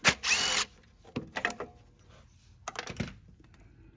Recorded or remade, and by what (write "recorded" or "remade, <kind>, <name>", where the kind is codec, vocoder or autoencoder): recorded